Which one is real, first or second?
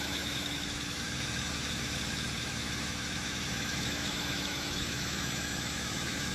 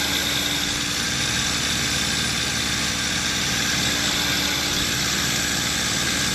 second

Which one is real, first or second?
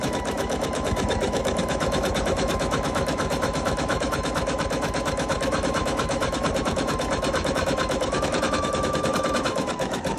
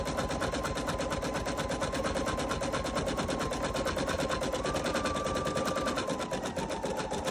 second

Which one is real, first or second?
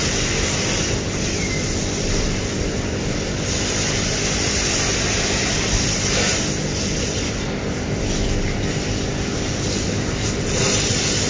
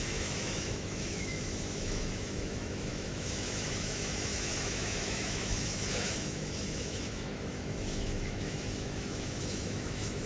first